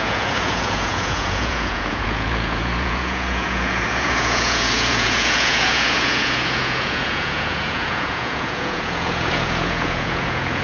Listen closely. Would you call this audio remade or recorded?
remade